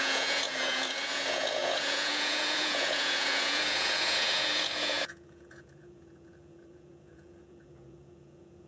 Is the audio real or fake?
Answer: fake